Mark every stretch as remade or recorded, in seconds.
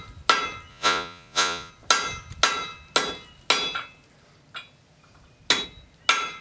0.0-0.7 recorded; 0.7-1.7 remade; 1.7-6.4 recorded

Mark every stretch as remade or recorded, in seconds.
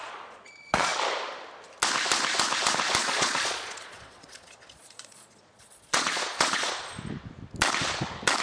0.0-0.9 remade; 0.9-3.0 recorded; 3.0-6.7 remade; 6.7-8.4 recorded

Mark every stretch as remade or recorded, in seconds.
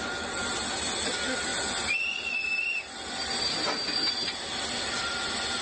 0.0-5.6 recorded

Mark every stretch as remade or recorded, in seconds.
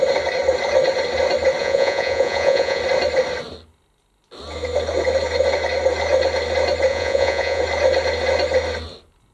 0.0-1.6 recorded; 1.6-2.8 remade; 2.8-6.9 recorded; 6.9-7.6 remade; 7.6-9.3 recorded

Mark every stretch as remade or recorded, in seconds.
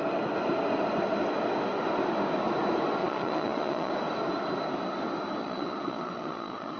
0.0-3.0 recorded; 3.0-3.9 remade; 3.9-5.4 recorded; 5.4-6.8 remade